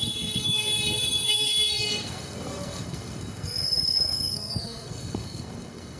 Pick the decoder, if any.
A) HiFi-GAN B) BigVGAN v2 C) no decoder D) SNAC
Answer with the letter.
D